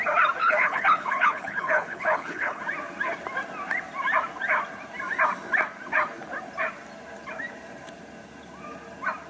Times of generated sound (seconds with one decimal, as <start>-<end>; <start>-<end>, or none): 0.4-2.6